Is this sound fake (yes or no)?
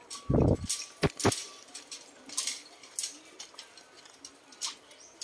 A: no